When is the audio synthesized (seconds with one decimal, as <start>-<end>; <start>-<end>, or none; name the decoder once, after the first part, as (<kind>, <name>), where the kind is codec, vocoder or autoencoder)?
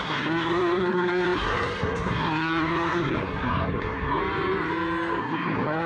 0.0-4.2 (codec, SNAC); 5.2-5.9